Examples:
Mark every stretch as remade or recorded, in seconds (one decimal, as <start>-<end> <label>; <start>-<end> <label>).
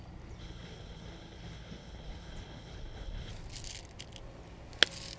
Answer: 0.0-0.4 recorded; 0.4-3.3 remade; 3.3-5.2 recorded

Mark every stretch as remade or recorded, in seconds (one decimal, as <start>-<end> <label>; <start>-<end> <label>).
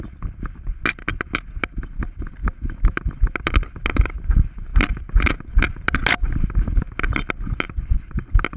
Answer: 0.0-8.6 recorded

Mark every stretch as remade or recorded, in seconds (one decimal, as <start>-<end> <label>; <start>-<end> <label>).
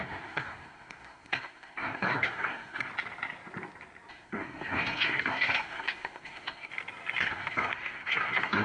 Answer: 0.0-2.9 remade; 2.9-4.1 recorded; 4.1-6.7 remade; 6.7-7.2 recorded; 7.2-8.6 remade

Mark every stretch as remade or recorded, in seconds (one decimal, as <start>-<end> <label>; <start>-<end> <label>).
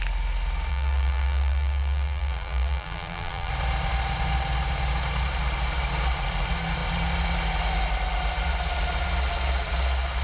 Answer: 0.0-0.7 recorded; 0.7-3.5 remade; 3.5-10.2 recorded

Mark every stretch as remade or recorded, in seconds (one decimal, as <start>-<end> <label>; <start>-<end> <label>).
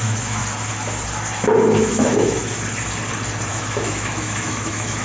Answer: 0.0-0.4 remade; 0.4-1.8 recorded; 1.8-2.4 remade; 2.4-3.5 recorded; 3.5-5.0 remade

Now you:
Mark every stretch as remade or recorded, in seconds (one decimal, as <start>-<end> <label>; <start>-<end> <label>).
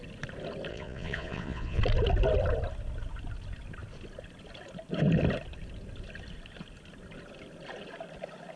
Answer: 0.0-0.7 recorded; 0.7-1.8 remade; 1.8-8.6 recorded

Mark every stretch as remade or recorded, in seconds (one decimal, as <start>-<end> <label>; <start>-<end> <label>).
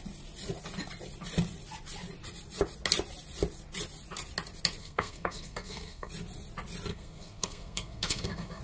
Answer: 0.0-4.8 recorded; 4.8-6.1 remade; 6.1-6.9 recorded; 6.9-8.6 remade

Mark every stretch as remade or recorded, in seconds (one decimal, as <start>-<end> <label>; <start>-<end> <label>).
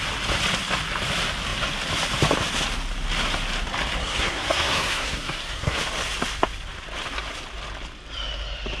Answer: 0.0-4.0 recorded; 4.0-5.8 remade; 5.8-8.8 recorded